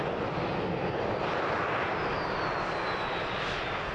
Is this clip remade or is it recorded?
recorded